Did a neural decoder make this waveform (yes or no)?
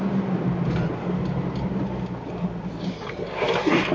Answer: no